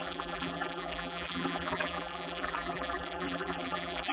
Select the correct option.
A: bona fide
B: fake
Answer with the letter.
B